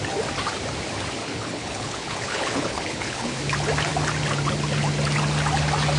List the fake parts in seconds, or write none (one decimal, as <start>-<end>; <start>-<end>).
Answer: 1.2-3.4